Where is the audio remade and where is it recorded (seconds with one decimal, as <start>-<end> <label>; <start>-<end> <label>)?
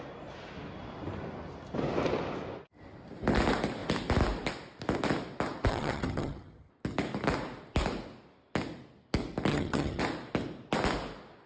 0.0-5.7 recorded; 5.7-6.7 remade; 6.7-9.5 recorded; 9.5-10.0 remade; 10.0-11.5 recorded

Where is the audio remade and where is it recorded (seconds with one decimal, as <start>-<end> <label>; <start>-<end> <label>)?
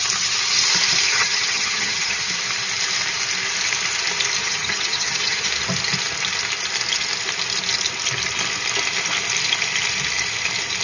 0.0-1.1 recorded; 1.1-2.3 remade; 2.3-4.4 recorded; 4.4-5.5 remade; 5.5-10.8 recorded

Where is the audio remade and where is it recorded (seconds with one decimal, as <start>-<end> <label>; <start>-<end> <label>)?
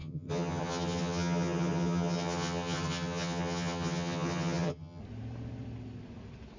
0.0-5.0 remade; 5.0-6.6 recorded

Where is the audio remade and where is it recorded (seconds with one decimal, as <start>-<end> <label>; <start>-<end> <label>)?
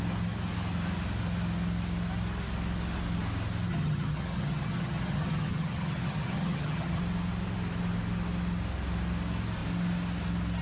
0.0-3.7 recorded; 3.7-7.0 remade; 7.0-10.6 recorded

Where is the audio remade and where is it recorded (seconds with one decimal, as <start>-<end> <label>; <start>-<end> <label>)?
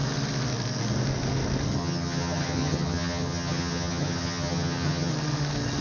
0.0-1.8 recorded; 1.8-5.1 remade; 5.1-5.8 recorded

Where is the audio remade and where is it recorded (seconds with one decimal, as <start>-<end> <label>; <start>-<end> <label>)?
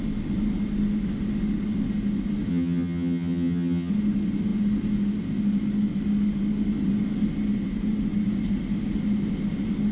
0.0-2.5 recorded; 2.5-3.9 remade; 3.9-9.9 recorded